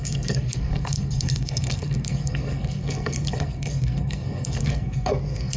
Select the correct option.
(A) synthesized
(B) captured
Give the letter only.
A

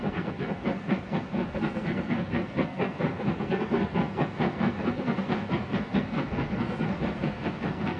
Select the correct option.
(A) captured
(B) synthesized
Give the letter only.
B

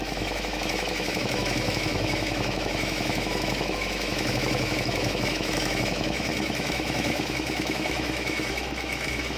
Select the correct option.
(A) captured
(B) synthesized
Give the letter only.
B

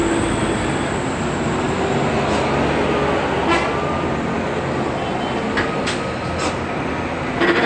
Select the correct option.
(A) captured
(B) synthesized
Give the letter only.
A